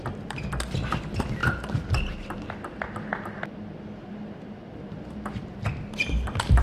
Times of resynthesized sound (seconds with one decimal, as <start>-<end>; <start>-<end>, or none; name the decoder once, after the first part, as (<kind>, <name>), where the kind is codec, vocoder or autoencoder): none